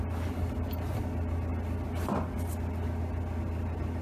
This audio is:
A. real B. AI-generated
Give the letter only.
A